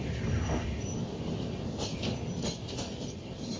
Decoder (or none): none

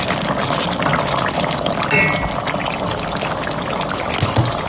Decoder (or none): none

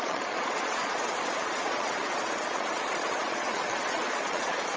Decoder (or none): vocoder, Vocos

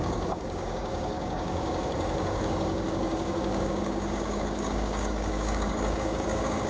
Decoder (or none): codec, DAC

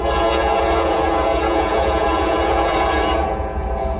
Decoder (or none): vocoder, Vocos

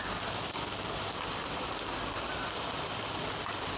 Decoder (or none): none